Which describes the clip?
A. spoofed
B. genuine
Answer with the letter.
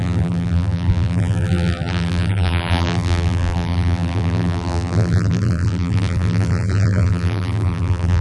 A